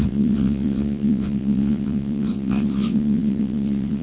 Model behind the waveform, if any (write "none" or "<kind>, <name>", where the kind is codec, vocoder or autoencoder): vocoder, WaveNeXt